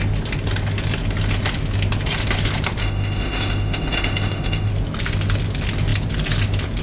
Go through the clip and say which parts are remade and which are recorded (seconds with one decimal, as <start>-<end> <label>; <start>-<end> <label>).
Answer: 0.0-2.8 recorded; 2.8-4.7 remade; 4.7-6.8 recorded